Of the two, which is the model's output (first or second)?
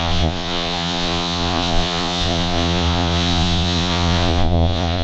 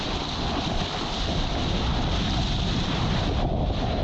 first